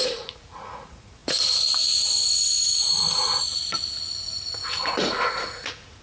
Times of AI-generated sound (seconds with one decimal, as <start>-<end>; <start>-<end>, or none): 0.0-6.0